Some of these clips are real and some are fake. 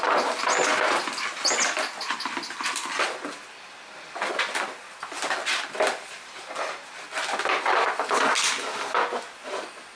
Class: real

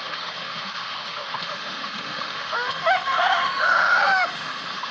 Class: fake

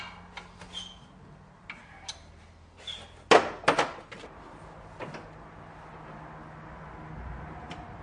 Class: real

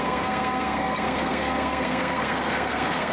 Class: fake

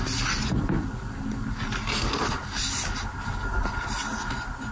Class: real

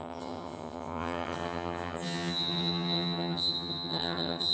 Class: fake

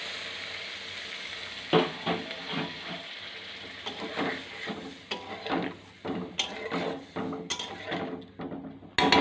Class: real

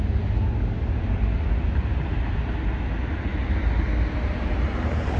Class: real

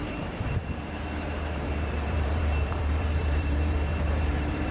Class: fake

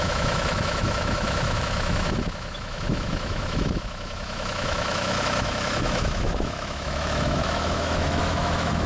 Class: fake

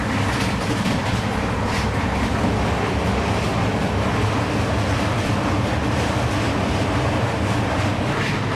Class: real